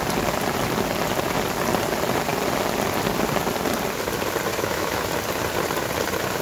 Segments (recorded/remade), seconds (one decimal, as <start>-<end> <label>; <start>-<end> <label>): 0.0-4.5 recorded; 4.5-5.1 remade; 5.1-6.4 recorded